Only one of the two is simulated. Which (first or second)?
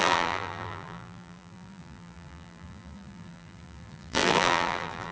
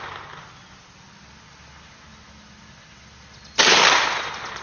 first